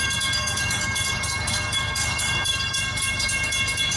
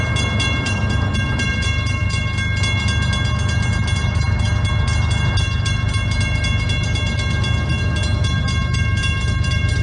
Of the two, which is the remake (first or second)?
first